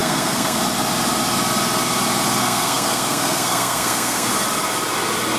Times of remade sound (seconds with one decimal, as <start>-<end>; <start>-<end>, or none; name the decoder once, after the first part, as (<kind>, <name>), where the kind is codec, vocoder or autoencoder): 0.0-0.6 (codec, SNAC); 2.4-4.3